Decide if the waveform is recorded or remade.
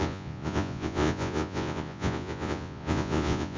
remade